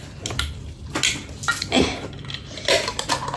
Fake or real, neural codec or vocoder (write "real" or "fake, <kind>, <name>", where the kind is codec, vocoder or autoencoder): real